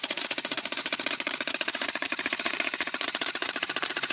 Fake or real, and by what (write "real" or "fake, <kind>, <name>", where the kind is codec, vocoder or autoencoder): fake, vocoder, Vocos